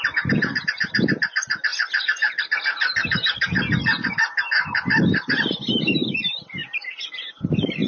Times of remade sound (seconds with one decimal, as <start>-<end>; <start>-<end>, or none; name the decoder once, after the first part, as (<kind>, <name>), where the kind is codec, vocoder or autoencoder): none